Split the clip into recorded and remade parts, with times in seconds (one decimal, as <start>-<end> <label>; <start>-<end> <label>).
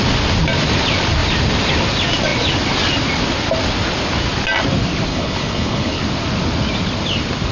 0.0-5.1 recorded; 5.1-6.0 remade; 6.0-7.5 recorded